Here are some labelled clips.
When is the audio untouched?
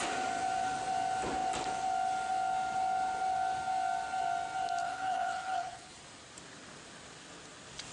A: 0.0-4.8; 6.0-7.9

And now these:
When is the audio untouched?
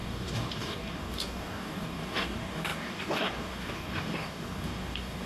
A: none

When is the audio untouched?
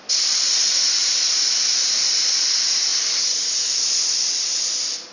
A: 0.0-5.1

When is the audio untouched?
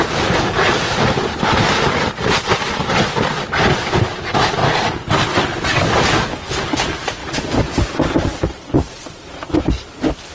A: 4.6-5.2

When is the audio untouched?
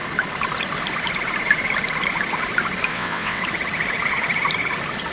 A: 0.0-2.9; 3.4-5.1